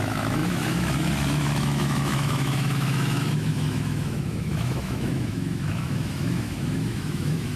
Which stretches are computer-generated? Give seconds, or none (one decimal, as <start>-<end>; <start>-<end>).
0.0-7.6